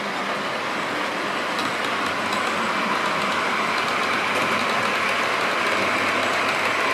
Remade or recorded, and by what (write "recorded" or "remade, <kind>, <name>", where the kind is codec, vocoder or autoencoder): recorded